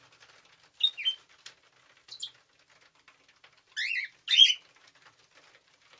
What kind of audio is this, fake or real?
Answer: real